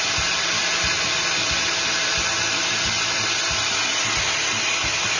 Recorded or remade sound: recorded